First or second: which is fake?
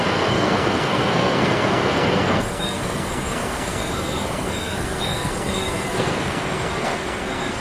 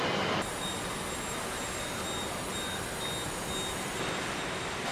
first